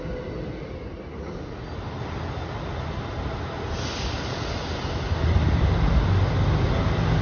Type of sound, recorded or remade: recorded